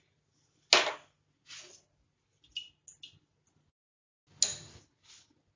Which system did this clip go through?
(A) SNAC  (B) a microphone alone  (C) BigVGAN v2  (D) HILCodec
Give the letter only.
B